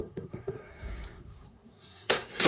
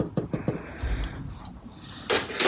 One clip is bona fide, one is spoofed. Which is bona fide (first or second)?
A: second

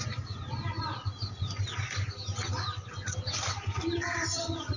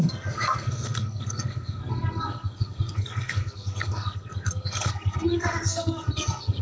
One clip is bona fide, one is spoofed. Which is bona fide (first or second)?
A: first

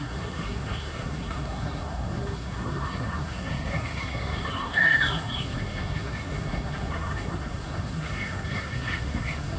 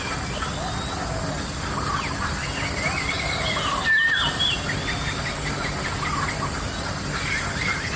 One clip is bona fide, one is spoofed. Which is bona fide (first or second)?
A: second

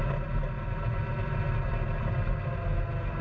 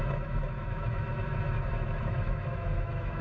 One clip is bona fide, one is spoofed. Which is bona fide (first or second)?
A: first